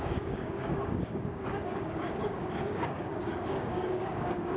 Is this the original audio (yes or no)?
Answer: no